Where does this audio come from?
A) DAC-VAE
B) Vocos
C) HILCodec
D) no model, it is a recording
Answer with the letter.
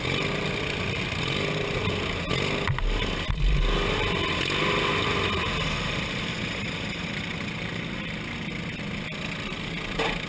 D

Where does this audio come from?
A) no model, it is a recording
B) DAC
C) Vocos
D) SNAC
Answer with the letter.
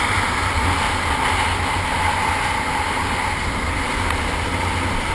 A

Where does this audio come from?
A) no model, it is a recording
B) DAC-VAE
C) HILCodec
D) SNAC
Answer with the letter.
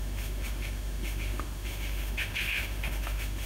B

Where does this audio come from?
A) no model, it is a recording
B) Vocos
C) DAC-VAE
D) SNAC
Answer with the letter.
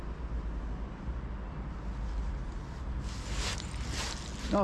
A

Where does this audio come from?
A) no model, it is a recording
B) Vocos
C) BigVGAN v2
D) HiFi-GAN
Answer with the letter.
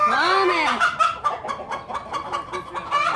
A